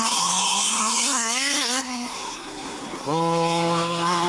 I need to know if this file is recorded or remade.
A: remade